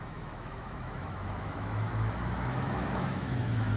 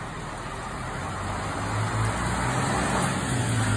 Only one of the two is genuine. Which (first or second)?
second